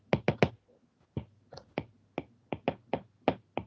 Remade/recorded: recorded